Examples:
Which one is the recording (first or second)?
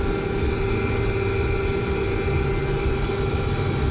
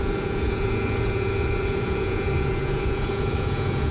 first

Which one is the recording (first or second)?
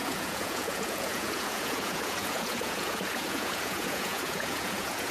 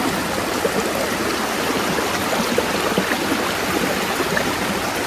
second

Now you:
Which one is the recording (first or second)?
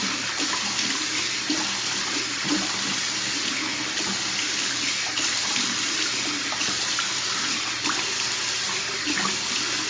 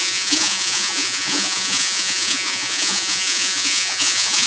first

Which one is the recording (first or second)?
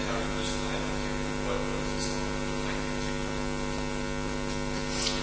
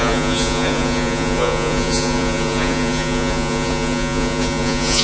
first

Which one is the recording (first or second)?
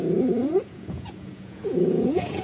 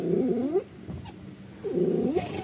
second